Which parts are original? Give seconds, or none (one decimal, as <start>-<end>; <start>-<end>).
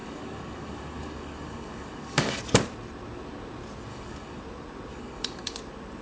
2.4-3.9; 4.4-4.9; 5.6-6.0